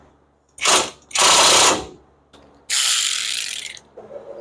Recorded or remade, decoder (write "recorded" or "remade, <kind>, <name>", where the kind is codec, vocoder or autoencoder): recorded